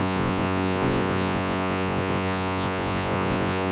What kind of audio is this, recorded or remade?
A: remade